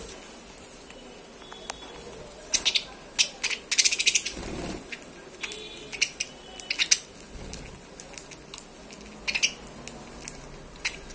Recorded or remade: recorded